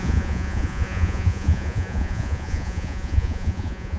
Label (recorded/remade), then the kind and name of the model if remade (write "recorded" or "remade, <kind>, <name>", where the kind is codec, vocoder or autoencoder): remade, vocoder, Vocos